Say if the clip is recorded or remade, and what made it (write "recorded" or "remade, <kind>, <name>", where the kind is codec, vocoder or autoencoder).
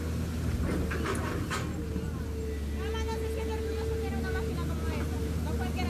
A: recorded